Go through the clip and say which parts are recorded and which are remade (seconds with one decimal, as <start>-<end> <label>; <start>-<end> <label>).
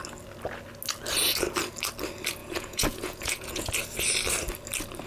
0.0-2.4 recorded; 2.4-3.7 remade; 3.7-5.1 recorded